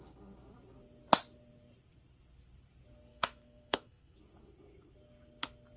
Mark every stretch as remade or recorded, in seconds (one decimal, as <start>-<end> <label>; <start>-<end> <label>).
0.0-3.1 recorded; 3.1-4.2 remade; 4.2-5.8 recorded